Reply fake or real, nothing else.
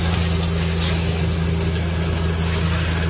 real